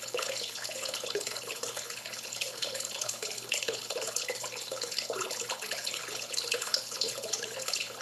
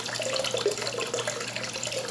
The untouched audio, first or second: second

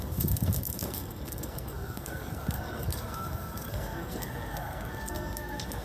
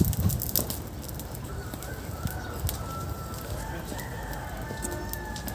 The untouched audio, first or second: second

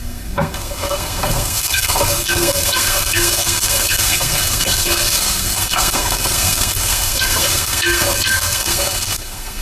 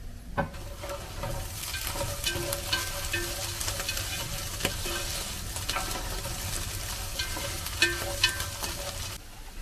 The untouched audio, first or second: second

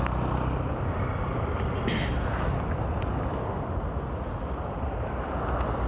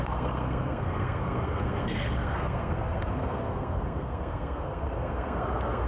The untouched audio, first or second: first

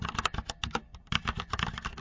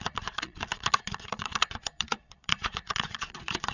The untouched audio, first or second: first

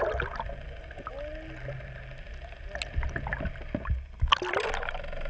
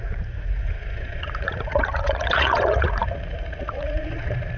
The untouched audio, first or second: first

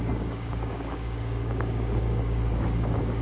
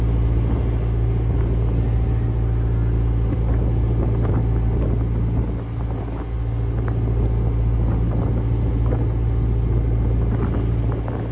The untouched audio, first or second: second